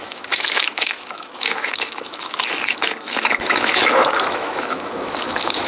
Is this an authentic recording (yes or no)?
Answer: no